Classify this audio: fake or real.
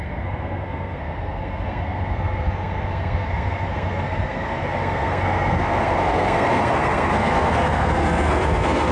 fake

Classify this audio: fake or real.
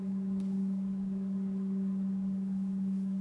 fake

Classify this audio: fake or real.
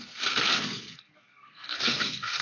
fake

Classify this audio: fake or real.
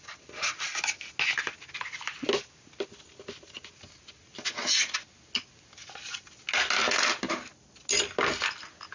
real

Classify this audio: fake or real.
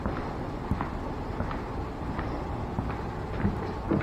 real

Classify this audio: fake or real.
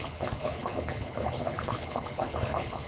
fake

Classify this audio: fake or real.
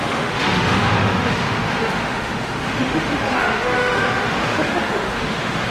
fake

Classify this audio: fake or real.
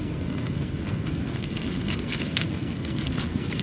fake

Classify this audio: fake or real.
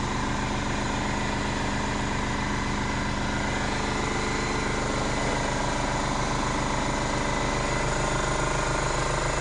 real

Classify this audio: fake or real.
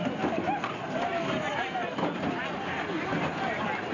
real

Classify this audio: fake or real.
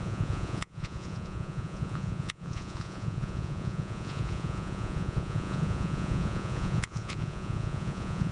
fake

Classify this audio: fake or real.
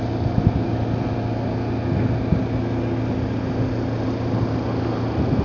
real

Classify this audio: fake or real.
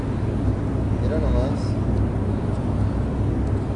real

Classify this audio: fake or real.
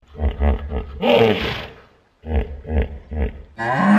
real